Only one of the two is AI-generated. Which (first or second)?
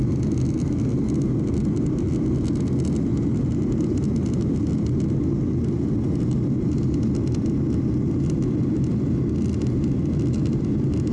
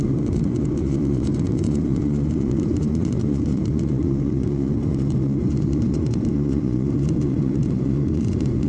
second